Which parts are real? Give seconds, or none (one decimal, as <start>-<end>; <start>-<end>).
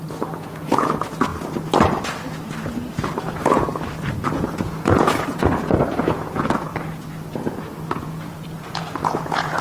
1.3-3.2; 3.7-4.3; 6.7-7.9